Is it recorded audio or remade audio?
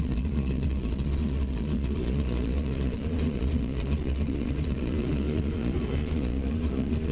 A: remade